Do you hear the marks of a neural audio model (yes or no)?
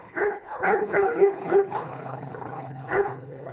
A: yes